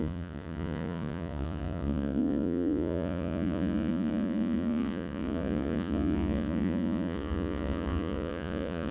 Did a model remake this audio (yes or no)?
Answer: yes